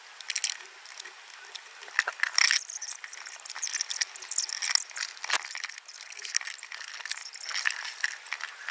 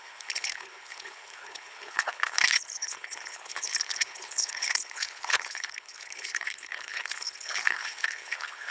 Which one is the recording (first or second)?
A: first